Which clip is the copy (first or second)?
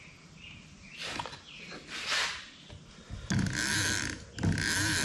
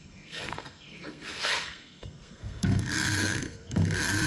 second